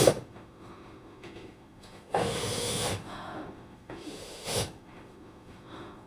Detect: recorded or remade remade